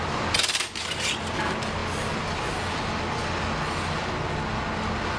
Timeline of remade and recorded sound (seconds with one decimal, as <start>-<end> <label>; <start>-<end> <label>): 0.0-5.2 recorded